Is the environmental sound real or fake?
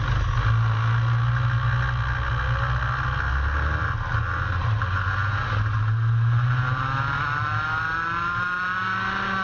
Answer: real